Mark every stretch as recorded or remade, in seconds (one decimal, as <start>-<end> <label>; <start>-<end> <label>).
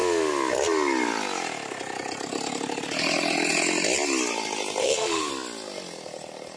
0.0-4.8 recorded; 4.8-5.3 remade; 5.3-6.6 recorded